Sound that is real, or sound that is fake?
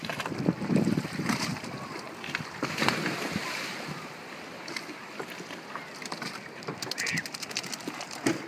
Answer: real